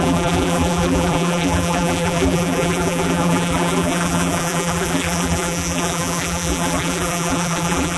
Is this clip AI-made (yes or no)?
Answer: yes